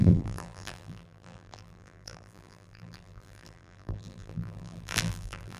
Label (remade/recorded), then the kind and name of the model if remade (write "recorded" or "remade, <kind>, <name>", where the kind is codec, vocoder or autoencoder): remade, vocoder, BigVGAN v2